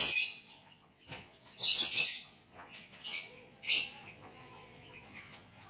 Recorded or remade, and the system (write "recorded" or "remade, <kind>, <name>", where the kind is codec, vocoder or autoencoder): remade, vocoder, Vocos